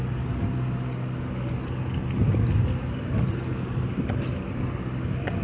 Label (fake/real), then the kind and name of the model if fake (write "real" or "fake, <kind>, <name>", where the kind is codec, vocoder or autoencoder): real